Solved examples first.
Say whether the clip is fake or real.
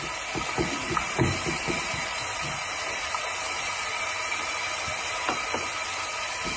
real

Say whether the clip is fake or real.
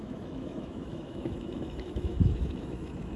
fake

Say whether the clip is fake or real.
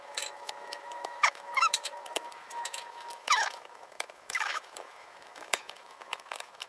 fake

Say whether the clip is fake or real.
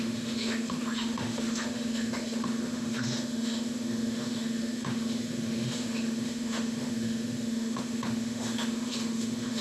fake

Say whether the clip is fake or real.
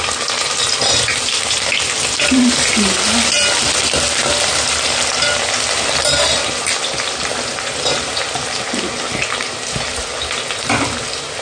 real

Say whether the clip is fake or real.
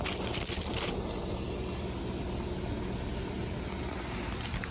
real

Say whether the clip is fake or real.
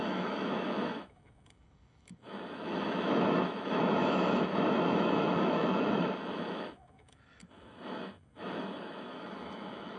fake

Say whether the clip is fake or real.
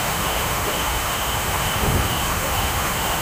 fake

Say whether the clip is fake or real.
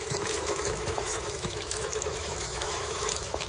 fake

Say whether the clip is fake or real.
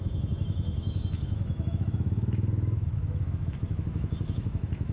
fake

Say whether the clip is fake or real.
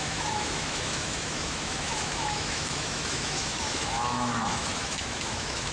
fake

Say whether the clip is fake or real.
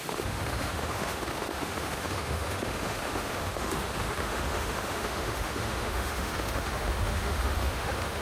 fake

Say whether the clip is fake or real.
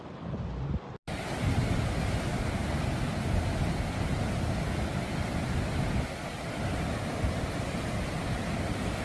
real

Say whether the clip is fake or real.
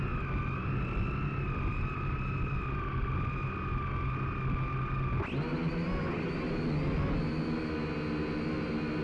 real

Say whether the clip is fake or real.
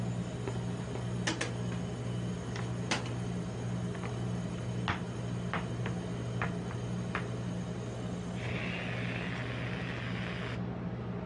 real